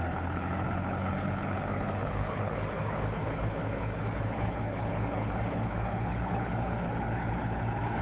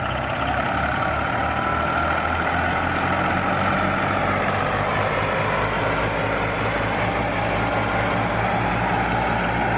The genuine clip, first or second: second